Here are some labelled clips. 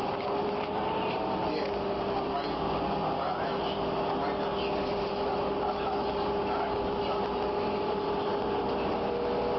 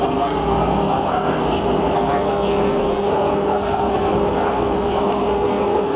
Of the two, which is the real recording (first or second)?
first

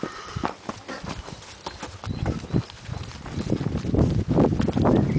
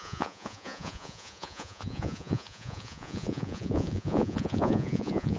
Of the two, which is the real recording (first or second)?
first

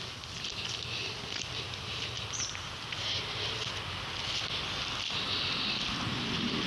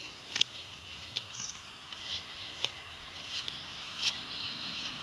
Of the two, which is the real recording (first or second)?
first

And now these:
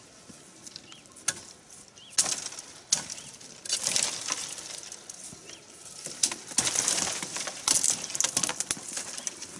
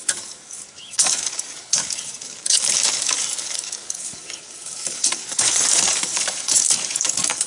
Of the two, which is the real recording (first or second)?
first